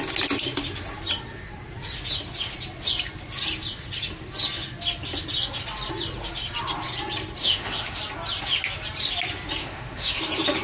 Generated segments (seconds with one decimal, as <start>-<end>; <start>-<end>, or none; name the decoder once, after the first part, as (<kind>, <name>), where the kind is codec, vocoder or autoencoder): 7.4-8.0 (autoencoder, DAC-VAE); 9.6-10.2